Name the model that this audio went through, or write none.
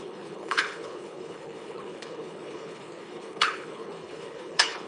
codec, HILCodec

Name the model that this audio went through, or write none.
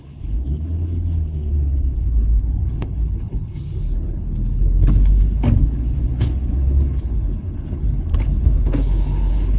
codec, HILCodec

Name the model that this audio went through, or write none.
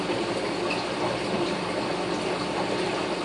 none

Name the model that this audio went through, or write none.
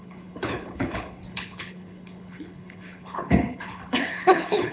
codec, HILCodec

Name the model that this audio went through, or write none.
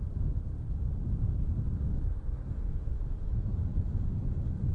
none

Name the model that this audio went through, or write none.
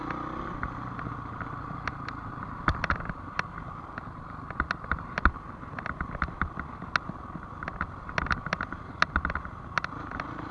none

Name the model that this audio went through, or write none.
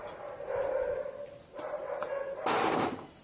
none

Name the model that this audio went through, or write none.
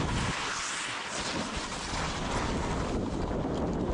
none